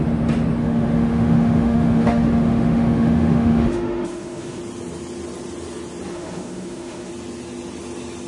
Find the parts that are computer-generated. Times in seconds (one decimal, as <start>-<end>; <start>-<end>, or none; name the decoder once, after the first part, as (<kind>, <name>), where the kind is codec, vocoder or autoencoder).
0.6-4.6 (autoencoder, DAC-VAE); 6.1-7.1